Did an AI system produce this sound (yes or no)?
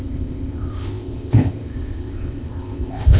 yes